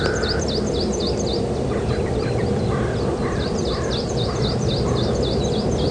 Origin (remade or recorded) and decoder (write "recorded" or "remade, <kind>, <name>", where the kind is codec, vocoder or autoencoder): remade, vocoder, BigVGAN v2